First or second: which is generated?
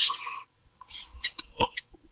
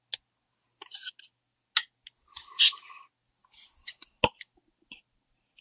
first